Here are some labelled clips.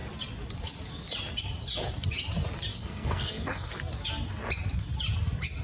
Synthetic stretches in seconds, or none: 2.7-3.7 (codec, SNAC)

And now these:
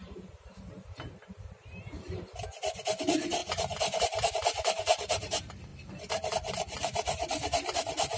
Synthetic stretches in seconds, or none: 0.0-5.7 (vocoder, BigVGAN v2); 6.3-8.2

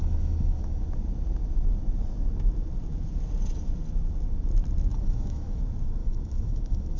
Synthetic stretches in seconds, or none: 0.0-0.8 (autoencoder, DAC-VAE); 4.9-5.6; 6.0-7.0

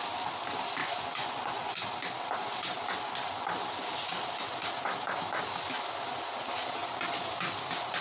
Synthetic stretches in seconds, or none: 0.8-1.8 (vocoder, Vocos)

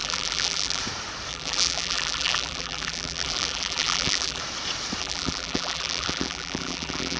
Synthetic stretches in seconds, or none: 0.0-0.8 (vocoder, BigVGAN v2); 1.3-4.4; 5.0-7.2

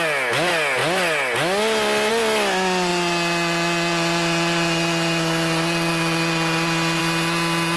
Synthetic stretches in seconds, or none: none

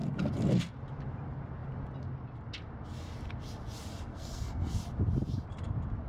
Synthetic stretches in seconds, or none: 4.1-4.8 (codec, SNAC)

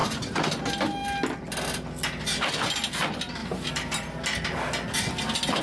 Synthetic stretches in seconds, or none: 3.4-4.2 (vocoder, BigVGAN v2)